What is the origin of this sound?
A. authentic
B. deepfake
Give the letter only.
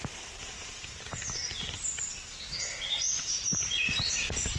A